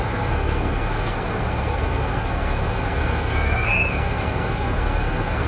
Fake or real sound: fake